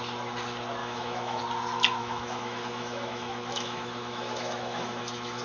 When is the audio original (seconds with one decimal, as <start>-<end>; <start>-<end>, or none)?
0.0-0.8; 1.4-2.0